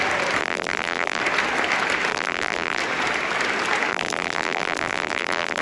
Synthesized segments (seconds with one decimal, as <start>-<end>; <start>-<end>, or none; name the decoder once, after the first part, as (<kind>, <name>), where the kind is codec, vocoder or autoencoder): 0.4-1.2 (vocoder, BigVGAN v2); 2.1-2.8; 3.9-5.6